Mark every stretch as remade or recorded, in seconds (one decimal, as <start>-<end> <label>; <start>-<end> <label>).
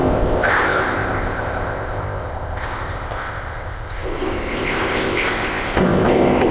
0.0-6.5 remade